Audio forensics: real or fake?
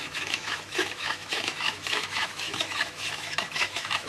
fake